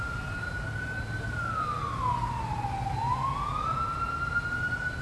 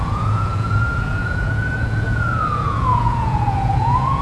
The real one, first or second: first